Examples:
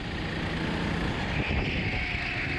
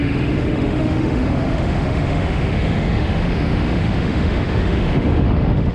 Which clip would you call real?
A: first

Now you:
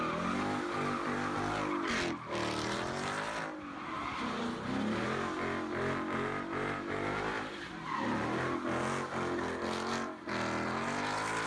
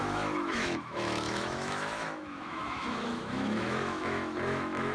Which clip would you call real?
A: first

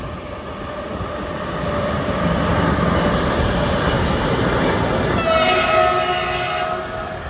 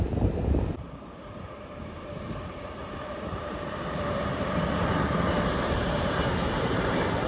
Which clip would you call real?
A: first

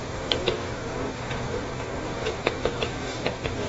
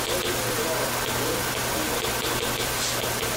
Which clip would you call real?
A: second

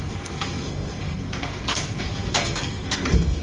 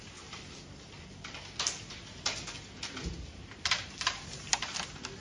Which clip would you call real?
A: second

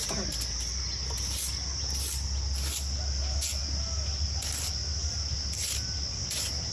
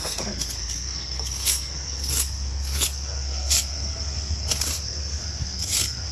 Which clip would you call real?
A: first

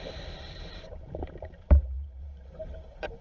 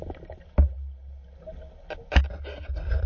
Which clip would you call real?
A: second